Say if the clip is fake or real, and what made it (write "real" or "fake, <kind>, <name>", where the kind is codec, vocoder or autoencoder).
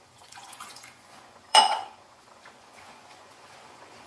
fake, vocoder, Vocos